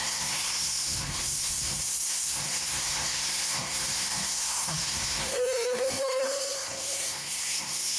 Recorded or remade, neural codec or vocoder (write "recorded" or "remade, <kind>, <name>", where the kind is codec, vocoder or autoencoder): remade, codec, SNAC